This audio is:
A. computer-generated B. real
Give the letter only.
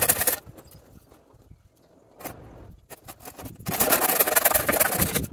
B